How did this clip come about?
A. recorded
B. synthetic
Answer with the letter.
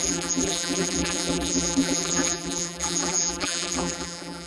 B